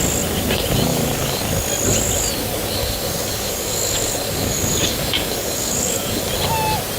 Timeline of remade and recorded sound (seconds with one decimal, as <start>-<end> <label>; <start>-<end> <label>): 0.0-0.9 recorded; 0.9-1.4 remade; 1.4-2.8 recorded; 2.8-6.2 remade; 6.2-7.0 recorded